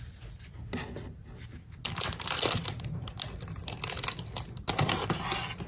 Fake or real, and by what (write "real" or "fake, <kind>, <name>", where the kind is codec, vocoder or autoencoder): real